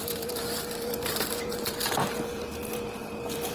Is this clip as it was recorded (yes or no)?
no